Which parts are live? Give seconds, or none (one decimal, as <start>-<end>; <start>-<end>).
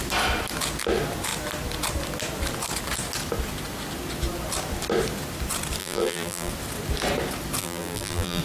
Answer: 0.0-5.8; 6.5-7.6